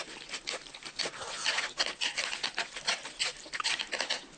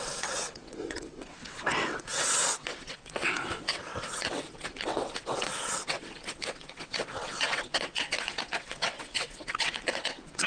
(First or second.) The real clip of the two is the first